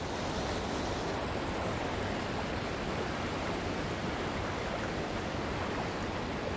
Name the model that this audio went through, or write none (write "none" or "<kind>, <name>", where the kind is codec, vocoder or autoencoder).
none